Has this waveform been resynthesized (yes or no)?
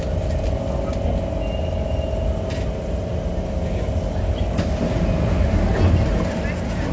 no